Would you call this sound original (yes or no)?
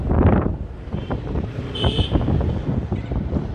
no